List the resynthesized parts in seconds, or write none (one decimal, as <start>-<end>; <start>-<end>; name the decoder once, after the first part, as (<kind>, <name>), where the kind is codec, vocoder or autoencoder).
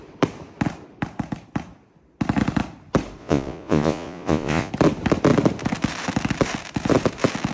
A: 3.2-4.7 (vocoder, Vocos)